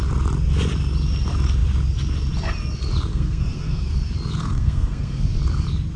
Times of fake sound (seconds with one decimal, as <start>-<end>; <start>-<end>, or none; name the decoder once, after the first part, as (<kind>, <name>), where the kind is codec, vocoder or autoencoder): 3.1-3.9 (codec, SNAC); 4.4-5.2